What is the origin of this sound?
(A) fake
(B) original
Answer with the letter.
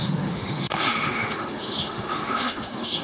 A